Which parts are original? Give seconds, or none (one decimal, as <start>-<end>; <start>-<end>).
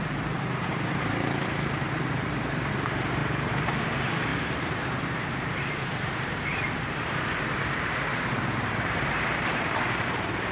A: 3.2-3.8